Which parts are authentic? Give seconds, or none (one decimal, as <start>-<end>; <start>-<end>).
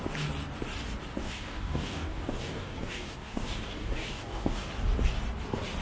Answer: 0.0-1.2; 4.7-5.8